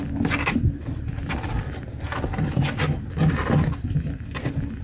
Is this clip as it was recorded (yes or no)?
yes